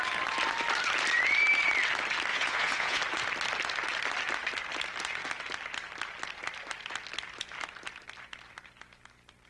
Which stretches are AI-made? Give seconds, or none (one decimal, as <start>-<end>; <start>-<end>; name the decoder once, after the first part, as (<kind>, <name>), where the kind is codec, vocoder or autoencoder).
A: 2.3-3.0 (vocoder, Vocos)